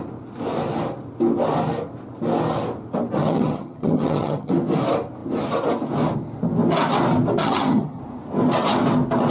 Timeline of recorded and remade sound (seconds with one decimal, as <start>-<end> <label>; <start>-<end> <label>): 0.0-3.2 recorded; 3.2-4.5 remade; 4.5-7.4 recorded; 7.4-8.0 remade; 8.0-9.3 recorded